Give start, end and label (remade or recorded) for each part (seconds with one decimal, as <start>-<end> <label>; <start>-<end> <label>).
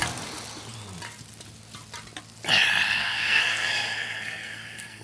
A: 0.0-3.0 recorded; 3.0-5.0 remade